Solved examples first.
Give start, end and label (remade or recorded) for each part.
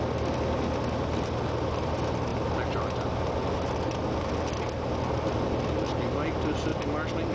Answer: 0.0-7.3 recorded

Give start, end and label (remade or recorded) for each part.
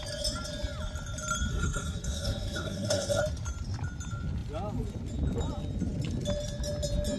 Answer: 0.0-1.5 recorded; 1.5-3.2 remade; 3.2-7.2 recorded